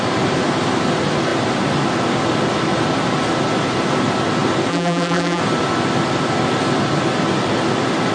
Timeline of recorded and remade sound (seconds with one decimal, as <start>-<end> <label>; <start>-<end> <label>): 0.0-4.7 recorded; 4.7-5.4 remade; 5.4-8.1 recorded